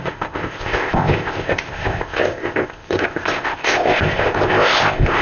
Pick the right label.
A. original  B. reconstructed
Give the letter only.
B